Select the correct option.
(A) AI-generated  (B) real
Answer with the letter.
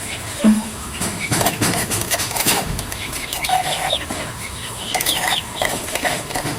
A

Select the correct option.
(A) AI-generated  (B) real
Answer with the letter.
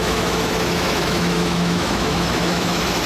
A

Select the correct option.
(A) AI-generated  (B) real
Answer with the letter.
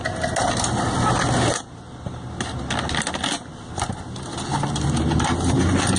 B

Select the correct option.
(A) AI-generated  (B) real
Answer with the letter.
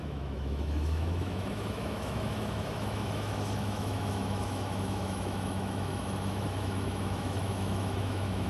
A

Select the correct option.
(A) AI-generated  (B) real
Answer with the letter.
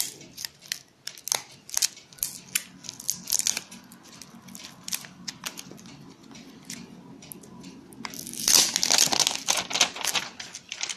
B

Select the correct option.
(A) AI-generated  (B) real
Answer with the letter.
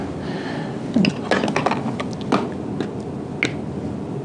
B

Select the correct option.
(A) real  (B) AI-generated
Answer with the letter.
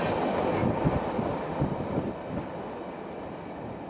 A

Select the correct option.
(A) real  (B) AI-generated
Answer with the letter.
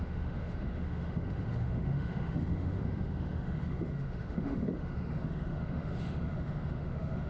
B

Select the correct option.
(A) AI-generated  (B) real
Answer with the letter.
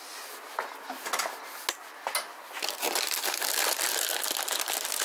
B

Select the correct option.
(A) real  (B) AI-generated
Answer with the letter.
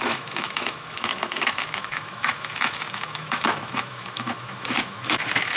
B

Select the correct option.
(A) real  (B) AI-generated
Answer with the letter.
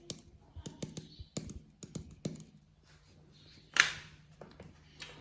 A